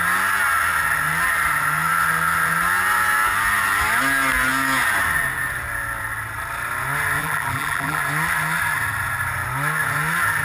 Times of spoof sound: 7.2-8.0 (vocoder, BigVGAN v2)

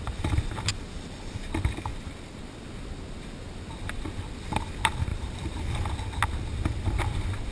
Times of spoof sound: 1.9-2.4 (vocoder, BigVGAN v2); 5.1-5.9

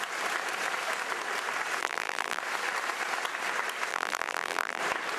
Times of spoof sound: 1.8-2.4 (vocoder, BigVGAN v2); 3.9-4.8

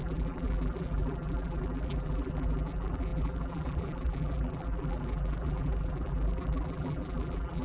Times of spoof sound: 0.0-7.6 (vocoder, BigVGAN v2)

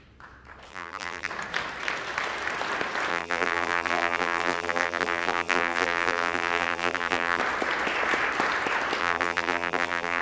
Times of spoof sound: 0.7-1.3 (vocoder, BigVGAN v2); 3.1-7.4; 9.0-10.2

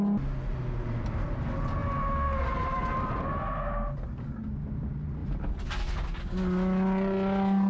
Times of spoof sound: 5.2-5.7 (vocoder, BigVGAN v2)

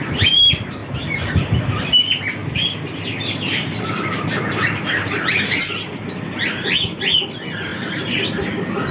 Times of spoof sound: 2.4-5.7 (vocoder, BigVGAN v2)

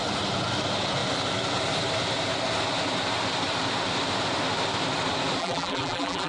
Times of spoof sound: 5.4-6.3 (vocoder, BigVGAN v2)